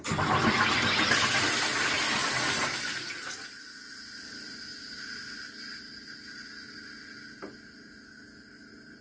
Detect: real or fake real